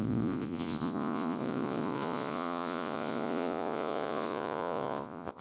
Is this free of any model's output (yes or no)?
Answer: no